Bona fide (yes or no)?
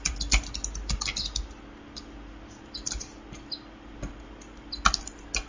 yes